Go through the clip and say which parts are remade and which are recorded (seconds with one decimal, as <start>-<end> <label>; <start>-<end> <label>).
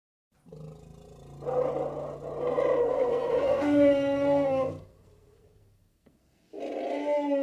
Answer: 0.0-2.8 recorded; 2.8-6.6 remade; 6.6-7.4 recorded